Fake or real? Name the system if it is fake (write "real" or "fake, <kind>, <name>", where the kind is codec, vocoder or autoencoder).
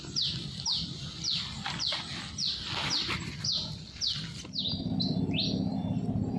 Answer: real